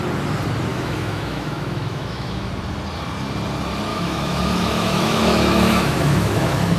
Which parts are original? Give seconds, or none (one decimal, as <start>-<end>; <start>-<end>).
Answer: 0.0-0.7; 2.5-3.9